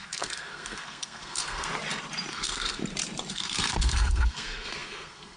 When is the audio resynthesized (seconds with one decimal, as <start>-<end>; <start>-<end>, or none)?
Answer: 0.0-1.7; 2.3-2.8; 3.3-5.4